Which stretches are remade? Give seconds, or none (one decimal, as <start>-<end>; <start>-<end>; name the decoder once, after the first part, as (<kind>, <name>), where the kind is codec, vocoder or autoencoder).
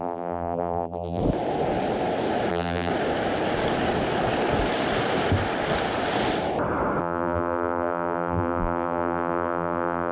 0.0-1.2 (vocoder, BigVGAN v2); 2.5-2.9; 7.0-10.1